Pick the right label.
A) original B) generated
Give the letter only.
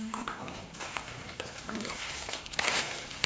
B